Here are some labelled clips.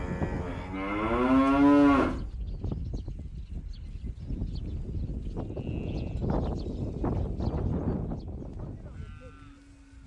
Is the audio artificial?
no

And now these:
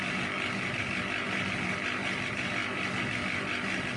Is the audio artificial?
no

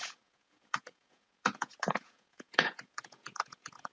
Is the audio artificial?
yes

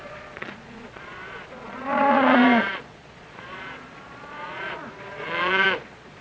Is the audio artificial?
yes